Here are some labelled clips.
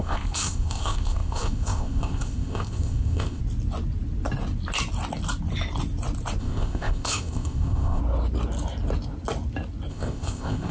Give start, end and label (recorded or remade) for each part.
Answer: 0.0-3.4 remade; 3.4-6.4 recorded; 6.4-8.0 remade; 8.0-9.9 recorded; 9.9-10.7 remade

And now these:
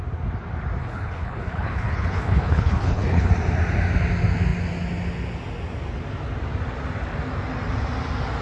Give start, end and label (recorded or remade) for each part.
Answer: 0.0-0.8 recorded; 0.8-3.3 remade; 3.3-8.4 recorded

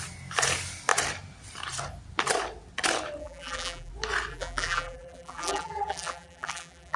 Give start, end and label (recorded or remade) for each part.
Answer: 0.0-3.2 recorded; 3.2-3.9 remade; 3.9-4.3 recorded; 4.3-7.0 remade

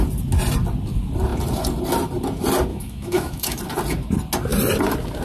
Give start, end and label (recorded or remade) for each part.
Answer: 0.0-2.7 recorded; 2.7-3.6 remade; 3.6-5.2 recorded

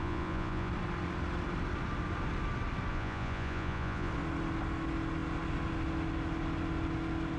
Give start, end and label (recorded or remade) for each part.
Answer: 0.0-0.7 remade; 0.7-2.9 recorded; 2.9-4.1 remade; 4.1-7.4 recorded